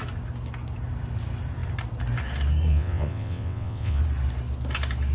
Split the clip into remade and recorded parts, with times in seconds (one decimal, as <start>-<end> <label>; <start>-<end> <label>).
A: 0.0-2.7 recorded; 2.7-4.0 remade; 4.0-5.1 recorded